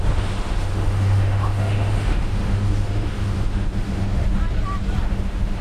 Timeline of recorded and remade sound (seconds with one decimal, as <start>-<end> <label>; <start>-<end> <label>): 0.0-4.4 remade; 4.4-5.0 recorded; 5.0-5.6 remade